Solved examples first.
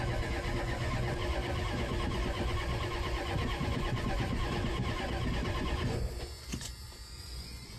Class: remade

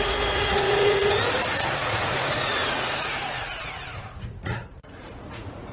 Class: remade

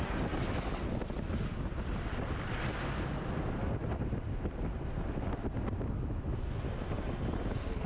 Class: recorded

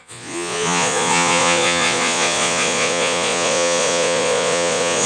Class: remade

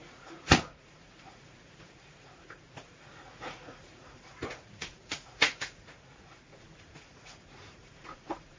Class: remade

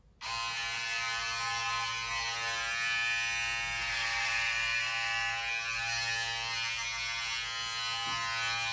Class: recorded